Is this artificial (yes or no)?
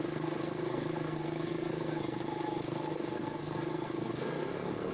yes